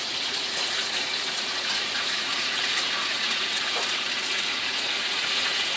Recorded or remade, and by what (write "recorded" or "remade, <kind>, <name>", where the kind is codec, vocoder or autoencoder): remade, vocoder, Vocos